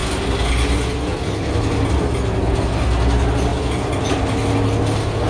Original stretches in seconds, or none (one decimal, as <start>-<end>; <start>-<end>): 0.0-5.3